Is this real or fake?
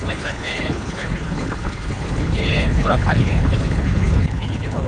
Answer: fake